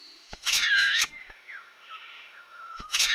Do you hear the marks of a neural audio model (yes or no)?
yes